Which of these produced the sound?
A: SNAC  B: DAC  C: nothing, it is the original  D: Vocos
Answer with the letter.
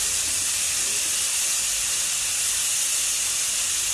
C